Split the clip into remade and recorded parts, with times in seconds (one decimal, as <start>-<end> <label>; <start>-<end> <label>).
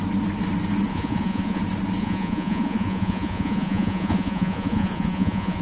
0.0-0.9 recorded; 0.9-1.6 remade; 1.6-2.0 recorded; 2.0-5.6 remade